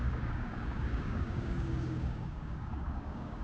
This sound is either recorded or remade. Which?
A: remade